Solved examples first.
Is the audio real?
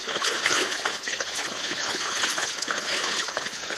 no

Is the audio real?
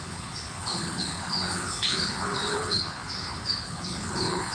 no